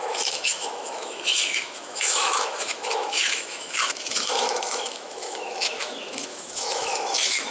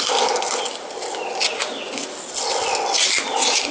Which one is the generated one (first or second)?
first